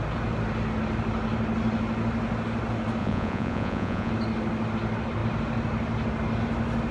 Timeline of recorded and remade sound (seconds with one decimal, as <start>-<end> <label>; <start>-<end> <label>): 0.0-3.0 recorded; 3.0-4.1 remade; 4.1-6.9 recorded